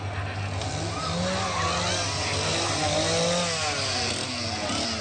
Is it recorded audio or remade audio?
recorded